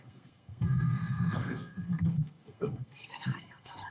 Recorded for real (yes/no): no